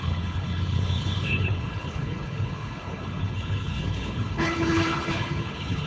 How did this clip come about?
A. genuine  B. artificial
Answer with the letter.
B